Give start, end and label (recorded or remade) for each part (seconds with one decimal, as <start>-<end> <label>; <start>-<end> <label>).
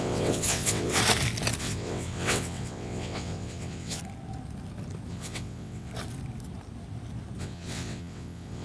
0.0-1.0 remade; 1.0-1.6 recorded; 1.6-4.0 remade; 4.0-5.1 recorded; 5.1-5.9 remade; 5.9-7.4 recorded; 7.4-8.6 remade